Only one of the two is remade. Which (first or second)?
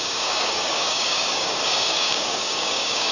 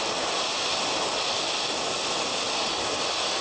first